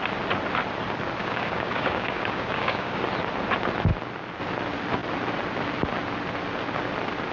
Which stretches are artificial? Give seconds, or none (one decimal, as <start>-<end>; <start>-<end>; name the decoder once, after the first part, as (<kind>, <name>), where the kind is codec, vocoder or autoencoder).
1.2-3.0 (codec, DAC)